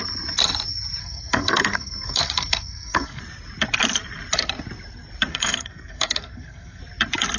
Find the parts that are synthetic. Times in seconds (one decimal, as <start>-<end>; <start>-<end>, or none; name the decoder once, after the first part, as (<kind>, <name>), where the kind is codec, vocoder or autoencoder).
1.0-3.2 (codec, SNAC); 5.3-6.8